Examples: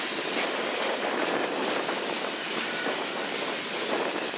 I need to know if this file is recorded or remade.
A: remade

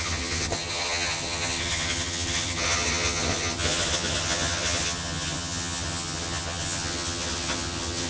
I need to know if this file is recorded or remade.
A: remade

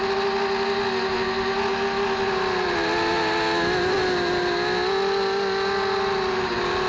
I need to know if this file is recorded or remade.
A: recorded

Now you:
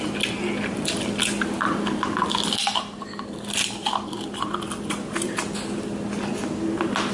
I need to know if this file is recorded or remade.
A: recorded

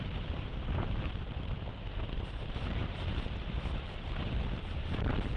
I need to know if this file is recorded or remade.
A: remade